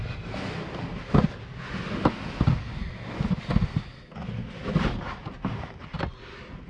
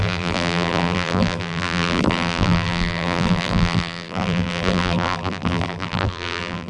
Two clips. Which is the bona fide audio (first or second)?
first